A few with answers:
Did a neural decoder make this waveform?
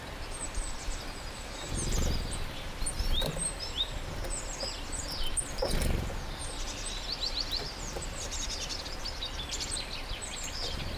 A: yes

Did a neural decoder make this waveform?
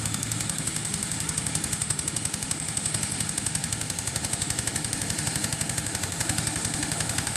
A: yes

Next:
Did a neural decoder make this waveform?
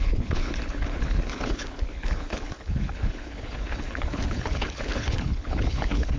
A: yes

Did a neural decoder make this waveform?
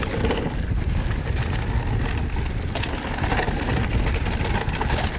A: no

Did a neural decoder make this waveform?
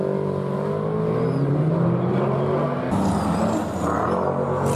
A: no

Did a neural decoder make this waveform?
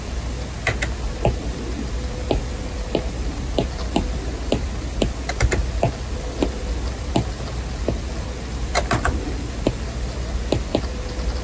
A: no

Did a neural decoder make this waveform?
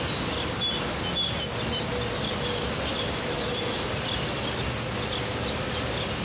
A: no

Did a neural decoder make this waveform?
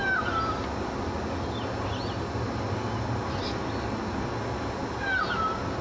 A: no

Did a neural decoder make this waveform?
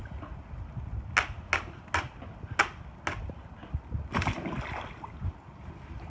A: no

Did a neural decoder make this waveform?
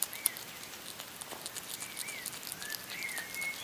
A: no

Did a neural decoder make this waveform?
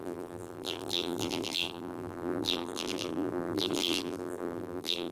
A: yes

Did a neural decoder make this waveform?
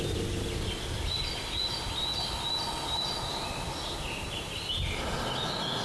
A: no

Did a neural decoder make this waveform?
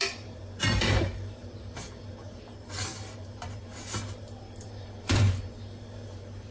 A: yes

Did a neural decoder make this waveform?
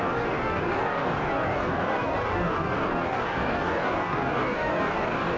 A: yes